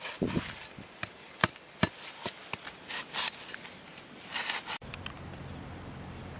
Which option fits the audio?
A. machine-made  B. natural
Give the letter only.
B